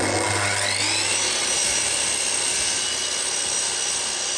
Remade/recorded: recorded